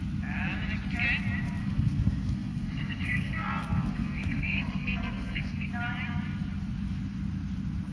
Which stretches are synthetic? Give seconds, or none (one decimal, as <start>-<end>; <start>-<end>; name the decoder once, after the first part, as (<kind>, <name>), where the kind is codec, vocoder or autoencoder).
1.6-5.7 (codec, SNAC)